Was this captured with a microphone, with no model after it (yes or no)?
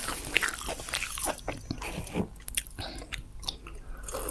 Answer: yes